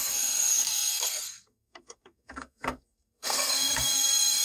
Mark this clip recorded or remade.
remade